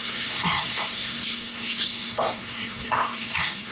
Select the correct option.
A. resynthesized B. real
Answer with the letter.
A